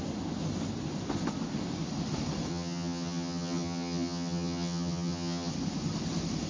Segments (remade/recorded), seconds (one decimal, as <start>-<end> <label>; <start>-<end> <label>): 0.0-2.5 recorded; 2.5-5.5 remade; 5.5-6.5 recorded